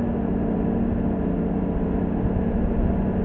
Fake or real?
real